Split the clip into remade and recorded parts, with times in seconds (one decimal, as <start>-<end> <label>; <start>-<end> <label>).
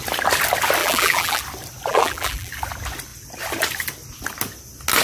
0.0-0.8 recorded; 0.8-1.4 remade; 1.4-1.9 recorded; 1.9-2.5 remade; 2.5-5.0 recorded